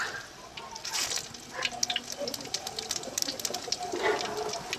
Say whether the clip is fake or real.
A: real